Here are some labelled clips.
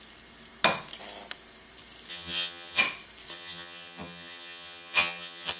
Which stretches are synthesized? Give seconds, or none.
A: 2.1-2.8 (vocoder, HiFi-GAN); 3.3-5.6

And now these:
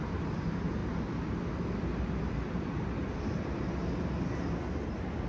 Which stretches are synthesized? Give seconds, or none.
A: 0.0-0.8 (vocoder, BigVGAN v2); 3.4-3.8; 4.7-5.3

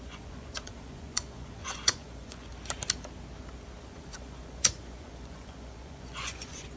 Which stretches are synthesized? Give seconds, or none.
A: 0.0-2.5 (vocoder, Vocos); 3.8-6.8

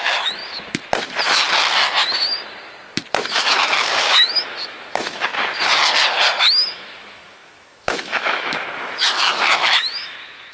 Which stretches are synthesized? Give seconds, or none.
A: 0.0-0.4 (autoencoder, DAC-VAE); 3.3-5.3; 6.4-10.5